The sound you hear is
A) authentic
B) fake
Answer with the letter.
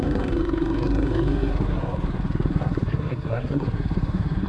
B